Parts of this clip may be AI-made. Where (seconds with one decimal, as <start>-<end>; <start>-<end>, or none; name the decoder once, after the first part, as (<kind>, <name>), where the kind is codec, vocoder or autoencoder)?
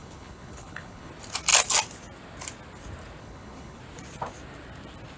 0.0-1.1 (codec, HILCodec); 3.2-3.8